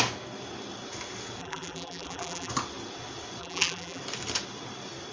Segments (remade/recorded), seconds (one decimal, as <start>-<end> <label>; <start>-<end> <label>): 0.0-1.4 recorded; 1.4-2.5 remade; 2.5-3.4 recorded; 3.4-4.0 remade; 4.0-5.1 recorded